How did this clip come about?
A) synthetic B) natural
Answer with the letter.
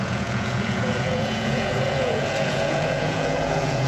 A